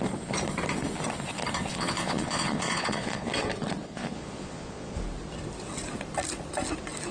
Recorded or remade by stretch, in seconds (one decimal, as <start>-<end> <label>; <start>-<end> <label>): 0.0-1.7 recorded; 1.7-3.3 remade; 3.3-3.8 recorded; 3.8-5.0 remade; 5.0-7.1 recorded